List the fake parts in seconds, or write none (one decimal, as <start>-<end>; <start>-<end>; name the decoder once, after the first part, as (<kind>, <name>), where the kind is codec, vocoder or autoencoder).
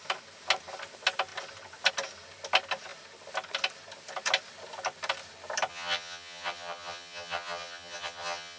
5.7-8.6 (vocoder, HiFi-GAN)